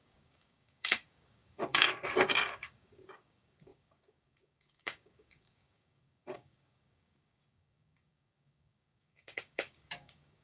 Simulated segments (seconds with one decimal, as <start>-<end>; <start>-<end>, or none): 0.0-10.4